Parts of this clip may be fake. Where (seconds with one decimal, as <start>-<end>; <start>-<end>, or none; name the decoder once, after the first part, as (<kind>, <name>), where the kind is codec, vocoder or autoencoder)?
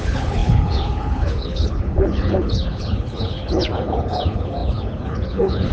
0.0-5.7 (codec, HILCodec)